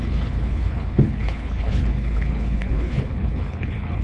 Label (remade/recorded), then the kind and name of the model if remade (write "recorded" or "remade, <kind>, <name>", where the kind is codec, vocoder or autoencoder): remade, codec, HILCodec